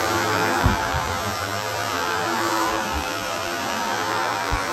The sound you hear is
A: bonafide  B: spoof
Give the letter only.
B